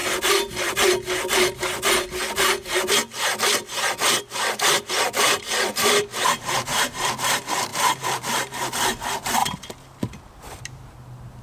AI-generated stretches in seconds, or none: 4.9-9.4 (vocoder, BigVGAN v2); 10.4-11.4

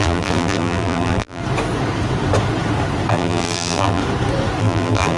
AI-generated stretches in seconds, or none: 0.0-1.4 (vocoder, BigVGAN v2); 3.1-4.0; 4.6-5.2

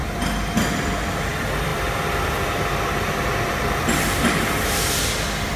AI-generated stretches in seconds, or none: 0.7-5.6 (vocoder, BigVGAN v2)

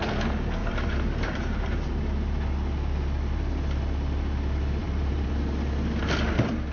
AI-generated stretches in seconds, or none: 0.6-1.9 (vocoder, BigVGAN v2); 4.8-5.3

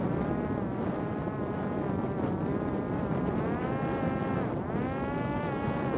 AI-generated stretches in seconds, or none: 2.5-3.7 (vocoder, BigVGAN v2)

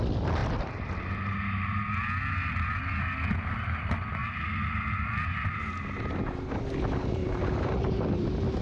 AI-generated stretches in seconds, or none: 7.2-8.2 (vocoder, BigVGAN v2)

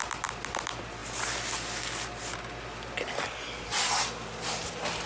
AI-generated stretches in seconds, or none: none

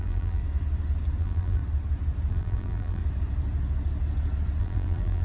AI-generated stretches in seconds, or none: 0.0-0.4 (vocoder, BigVGAN v2); 1.2-1.6; 2.3-3.0; 4.6-5.2